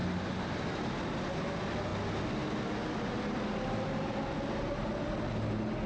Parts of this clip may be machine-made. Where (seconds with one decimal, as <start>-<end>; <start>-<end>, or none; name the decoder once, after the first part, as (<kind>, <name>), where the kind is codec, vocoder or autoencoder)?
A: none